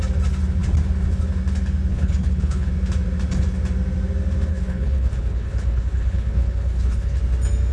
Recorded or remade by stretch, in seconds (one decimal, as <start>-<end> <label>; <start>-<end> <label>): 0.0-1.9 recorded; 1.9-2.7 remade; 2.7-4.5 recorded; 4.5-7.2 remade; 7.2-7.7 recorded